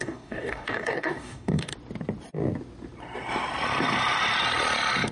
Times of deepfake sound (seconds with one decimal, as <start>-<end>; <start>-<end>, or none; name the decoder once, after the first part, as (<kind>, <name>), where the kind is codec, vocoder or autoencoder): 0.0-1.7 (codec, DAC)